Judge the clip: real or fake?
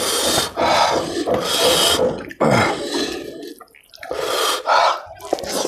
real